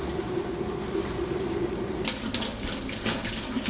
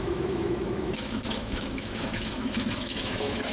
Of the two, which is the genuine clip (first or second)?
first